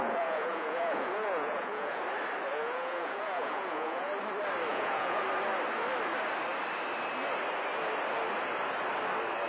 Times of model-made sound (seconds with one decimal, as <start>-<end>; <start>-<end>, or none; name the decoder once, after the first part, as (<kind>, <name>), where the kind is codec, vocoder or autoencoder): 0.0-2.0 (vocoder, Vocos); 2.5-4.1; 4.7-5.2

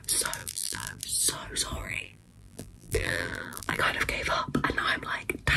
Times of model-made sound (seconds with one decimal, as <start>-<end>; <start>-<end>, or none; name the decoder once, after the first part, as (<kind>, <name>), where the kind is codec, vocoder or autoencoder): 0.4-1.0 (vocoder, BigVGAN v2); 1.8-3.8

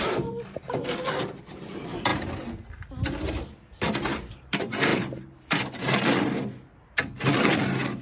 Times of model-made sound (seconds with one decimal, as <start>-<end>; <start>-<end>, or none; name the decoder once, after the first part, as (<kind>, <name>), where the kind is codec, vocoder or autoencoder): 0.0-2.1 (vocoder, BigVGAN v2); 4.0-8.0

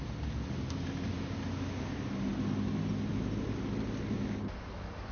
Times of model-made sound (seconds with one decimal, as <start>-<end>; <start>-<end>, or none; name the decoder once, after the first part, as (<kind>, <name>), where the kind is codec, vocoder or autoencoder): none

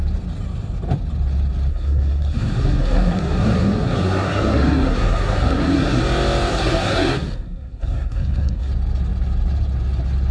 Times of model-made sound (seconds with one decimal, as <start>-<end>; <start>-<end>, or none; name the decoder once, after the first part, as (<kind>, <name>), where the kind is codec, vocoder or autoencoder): 1.7-6.0 (codec, SNAC); 6.5-8.7

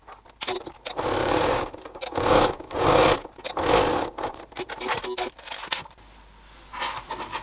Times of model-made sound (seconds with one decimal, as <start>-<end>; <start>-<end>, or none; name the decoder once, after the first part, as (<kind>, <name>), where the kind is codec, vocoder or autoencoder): 1.2-2.9 (codec, DAC); 3.9-4.4